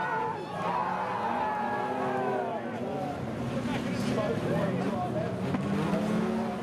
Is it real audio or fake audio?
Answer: real